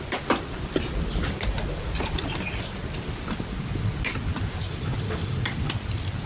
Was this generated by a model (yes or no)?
no